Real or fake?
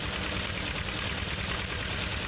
real